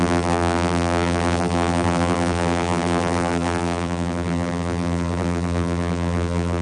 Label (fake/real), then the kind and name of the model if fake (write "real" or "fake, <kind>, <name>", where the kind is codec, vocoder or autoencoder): fake, vocoder, BigVGAN v2